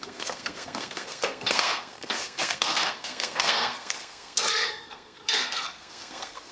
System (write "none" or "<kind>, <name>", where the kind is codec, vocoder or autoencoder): codec, SNAC